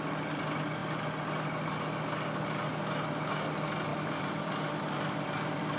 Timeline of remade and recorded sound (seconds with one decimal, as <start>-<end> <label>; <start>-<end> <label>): 0.0-3.9 recorded; 3.9-5.8 remade